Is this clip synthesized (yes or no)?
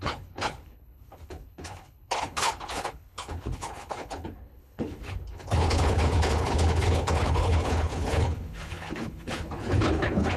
yes